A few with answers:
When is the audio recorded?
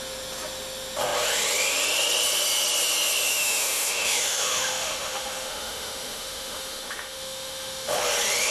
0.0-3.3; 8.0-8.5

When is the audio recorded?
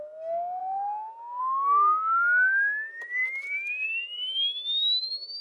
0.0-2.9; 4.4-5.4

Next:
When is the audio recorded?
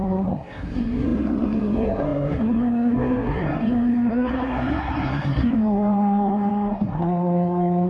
none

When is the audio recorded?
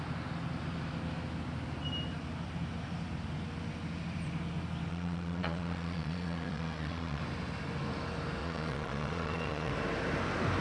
0.0-4.9; 7.2-8.4; 9.7-10.6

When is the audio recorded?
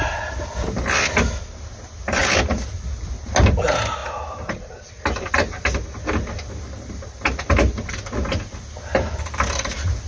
0.0-10.1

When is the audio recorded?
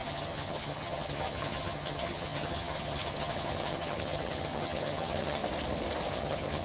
5.4-6.1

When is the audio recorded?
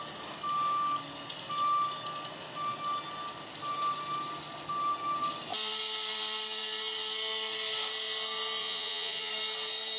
0.0-8.6; 9.3-10.0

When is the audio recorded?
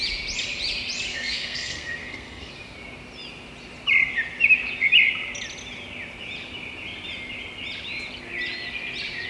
0.0-1.1; 2.5-9.3